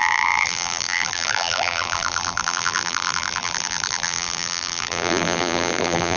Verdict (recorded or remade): remade